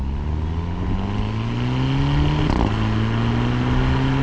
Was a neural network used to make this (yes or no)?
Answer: no